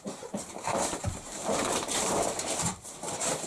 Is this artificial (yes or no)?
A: yes